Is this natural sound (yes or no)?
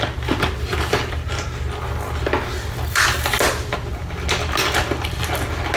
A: yes